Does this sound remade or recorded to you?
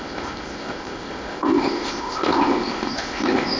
remade